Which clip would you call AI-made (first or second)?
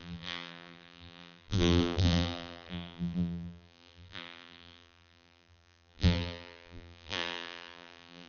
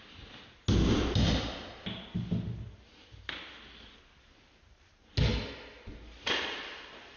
first